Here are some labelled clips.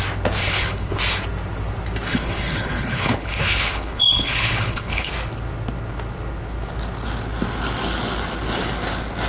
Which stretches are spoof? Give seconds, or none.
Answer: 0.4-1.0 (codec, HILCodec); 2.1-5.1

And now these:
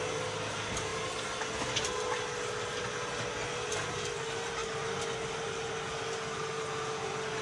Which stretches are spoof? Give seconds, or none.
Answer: none

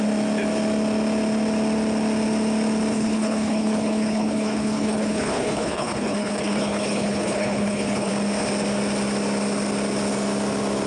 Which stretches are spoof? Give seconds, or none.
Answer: 2.9-8.1 (codec, HILCodec)